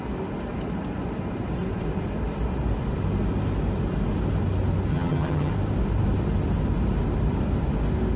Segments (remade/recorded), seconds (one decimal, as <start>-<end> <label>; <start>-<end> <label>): 0.0-4.9 recorded; 4.9-5.5 remade; 5.5-8.2 recorded